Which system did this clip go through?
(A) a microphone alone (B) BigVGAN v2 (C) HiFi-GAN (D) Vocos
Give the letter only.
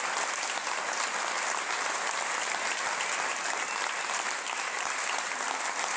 A